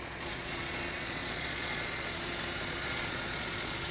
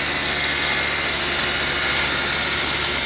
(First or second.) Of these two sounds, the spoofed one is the first